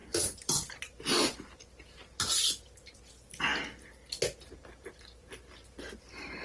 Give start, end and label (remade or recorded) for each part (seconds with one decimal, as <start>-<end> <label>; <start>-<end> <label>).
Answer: 0.0-1.1 remade; 1.1-6.4 recorded